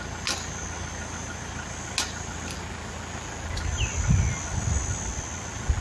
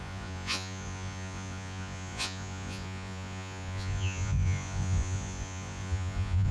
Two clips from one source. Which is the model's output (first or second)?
second